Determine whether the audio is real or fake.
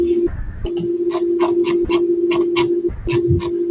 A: real